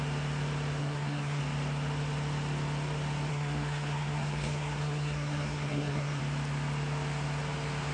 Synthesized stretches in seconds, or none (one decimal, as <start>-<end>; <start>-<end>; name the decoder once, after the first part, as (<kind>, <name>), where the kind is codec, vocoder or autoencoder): 0.8-1.4 (codec, SNAC); 3.3-6.2